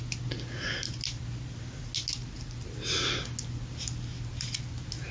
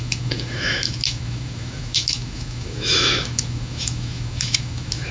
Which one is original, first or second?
first